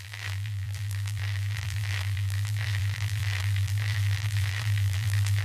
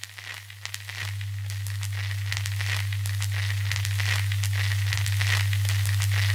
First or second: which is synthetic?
first